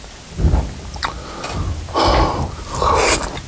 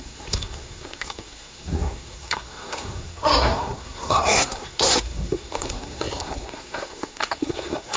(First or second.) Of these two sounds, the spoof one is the second